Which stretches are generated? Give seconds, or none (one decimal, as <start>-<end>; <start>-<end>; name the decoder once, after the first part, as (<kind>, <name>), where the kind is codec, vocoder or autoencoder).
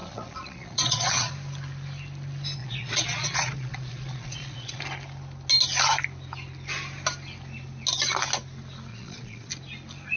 0.0-1.3 (vocoder, Vocos); 2.6-4.8; 8.9-9.5